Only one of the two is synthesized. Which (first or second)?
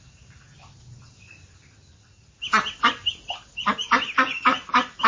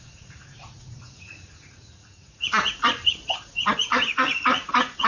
second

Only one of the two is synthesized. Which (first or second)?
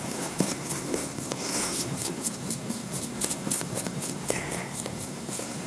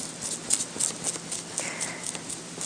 first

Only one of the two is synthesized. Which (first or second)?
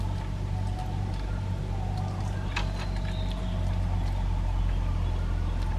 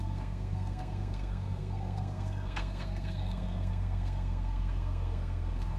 second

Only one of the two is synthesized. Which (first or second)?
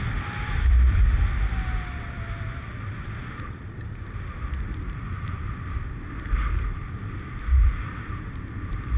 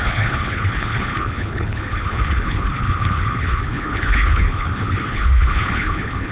second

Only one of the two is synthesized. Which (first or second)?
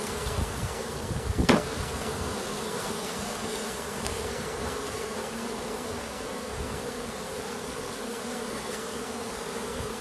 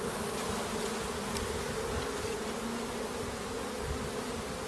first